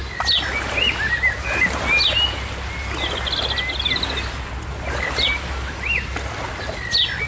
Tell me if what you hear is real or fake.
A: real